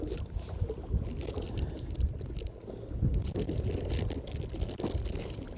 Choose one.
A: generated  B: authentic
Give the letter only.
B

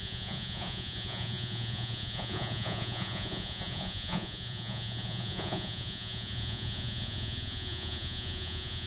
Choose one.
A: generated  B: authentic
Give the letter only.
A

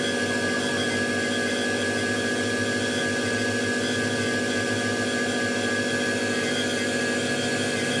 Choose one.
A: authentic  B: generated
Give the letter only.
A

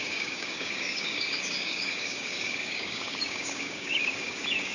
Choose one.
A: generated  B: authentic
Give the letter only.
A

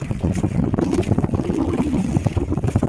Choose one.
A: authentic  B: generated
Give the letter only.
B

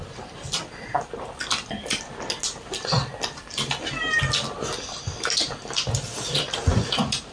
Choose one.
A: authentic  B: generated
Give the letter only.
A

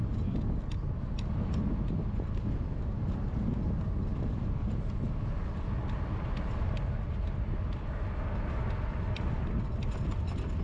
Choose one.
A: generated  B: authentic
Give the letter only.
B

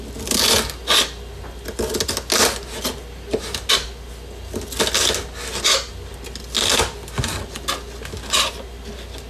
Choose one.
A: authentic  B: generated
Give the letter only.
A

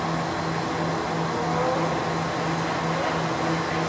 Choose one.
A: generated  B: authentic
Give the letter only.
B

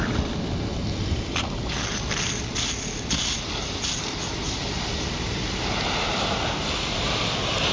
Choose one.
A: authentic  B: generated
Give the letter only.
A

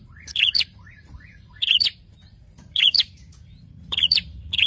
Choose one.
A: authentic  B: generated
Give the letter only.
B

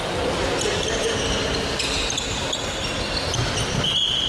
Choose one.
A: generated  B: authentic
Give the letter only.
B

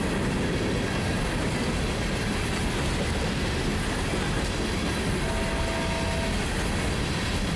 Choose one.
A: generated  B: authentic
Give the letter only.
B